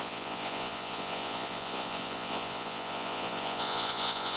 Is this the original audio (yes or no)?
no